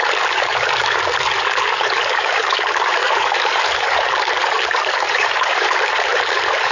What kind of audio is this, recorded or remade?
remade